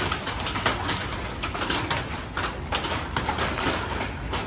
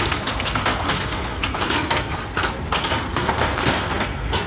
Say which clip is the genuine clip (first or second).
first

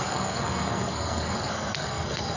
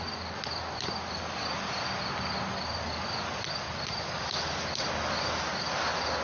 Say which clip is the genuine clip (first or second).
second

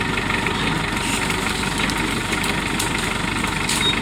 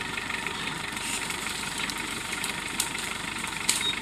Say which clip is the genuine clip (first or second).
first